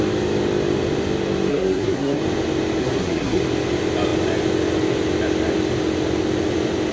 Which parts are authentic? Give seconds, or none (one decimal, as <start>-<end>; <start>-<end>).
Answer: 0.0-1.5; 2.2-2.8; 3.4-6.9